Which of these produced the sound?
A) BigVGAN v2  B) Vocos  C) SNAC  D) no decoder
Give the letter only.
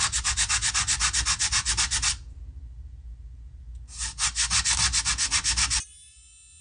D